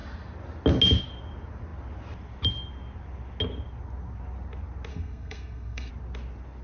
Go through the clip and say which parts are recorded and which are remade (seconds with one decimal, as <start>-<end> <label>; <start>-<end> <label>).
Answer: 0.0-4.9 recorded; 4.9-5.9 remade; 5.9-6.6 recorded